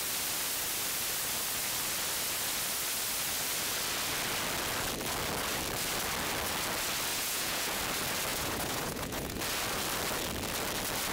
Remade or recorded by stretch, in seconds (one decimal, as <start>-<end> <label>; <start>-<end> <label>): 0.0-7.1 recorded; 7.1-7.8 remade; 7.8-8.3 recorded; 8.3-9.4 remade; 9.4-11.1 recorded